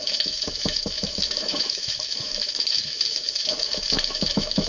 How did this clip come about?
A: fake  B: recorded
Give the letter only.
A